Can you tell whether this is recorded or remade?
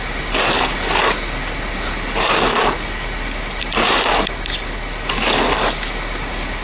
recorded